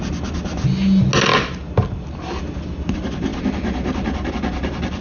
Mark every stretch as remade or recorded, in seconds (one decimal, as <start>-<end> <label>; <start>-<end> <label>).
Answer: 0.0-5.0 recorded